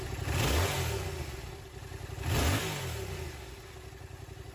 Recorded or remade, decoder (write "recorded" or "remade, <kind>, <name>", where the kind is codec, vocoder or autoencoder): recorded